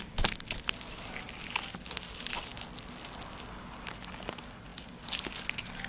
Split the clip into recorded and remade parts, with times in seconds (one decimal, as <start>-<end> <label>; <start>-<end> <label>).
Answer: 0.0-5.9 recorded